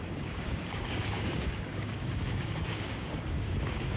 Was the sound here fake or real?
fake